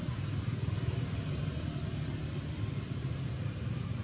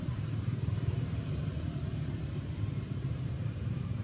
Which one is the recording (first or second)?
first